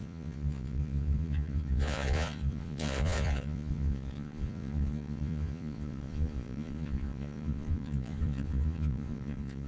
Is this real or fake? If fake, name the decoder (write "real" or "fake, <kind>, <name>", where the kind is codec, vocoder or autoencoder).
fake, vocoder, Vocos